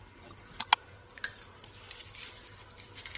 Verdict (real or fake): real